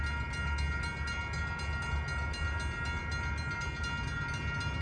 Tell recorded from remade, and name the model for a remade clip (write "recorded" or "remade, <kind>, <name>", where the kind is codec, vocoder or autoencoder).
recorded